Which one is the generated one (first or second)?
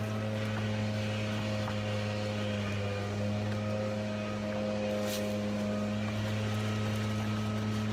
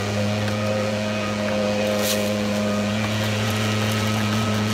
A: second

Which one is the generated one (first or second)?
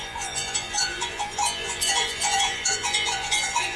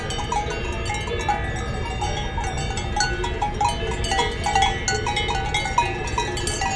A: first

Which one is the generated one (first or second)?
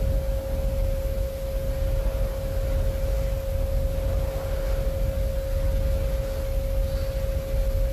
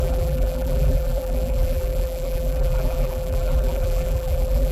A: second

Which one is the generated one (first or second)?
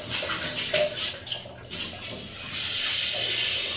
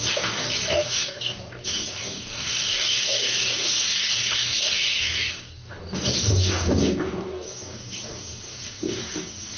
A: second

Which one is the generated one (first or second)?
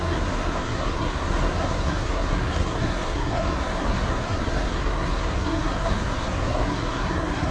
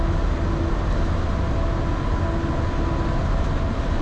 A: first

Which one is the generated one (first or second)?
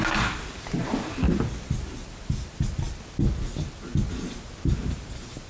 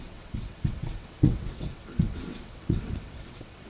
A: second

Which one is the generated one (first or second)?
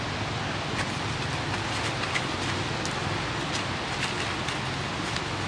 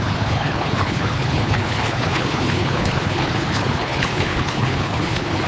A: second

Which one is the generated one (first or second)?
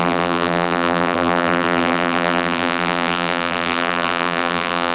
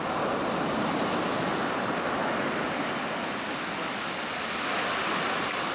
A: first